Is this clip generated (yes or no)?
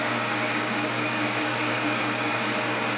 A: yes